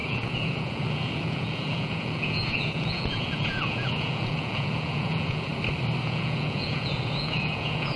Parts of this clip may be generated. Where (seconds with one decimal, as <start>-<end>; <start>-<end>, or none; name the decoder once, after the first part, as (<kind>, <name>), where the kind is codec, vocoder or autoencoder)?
0.0-5.5 (vocoder, Vocos); 6.0-8.0